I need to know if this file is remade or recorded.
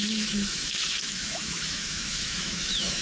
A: remade